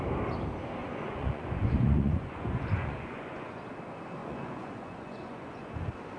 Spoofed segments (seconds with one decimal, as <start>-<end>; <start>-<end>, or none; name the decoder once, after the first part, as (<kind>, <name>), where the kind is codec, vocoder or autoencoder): 0.8-3.6 (vocoder, Vocos); 4.2-5.7